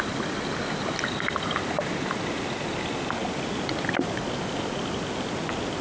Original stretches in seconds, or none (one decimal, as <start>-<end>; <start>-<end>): 0.0-5.8